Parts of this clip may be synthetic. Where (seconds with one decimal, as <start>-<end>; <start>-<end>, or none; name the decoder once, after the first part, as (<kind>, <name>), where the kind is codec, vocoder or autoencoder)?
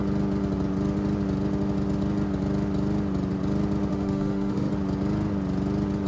3.9-4.7 (autoencoder, DAC-VAE)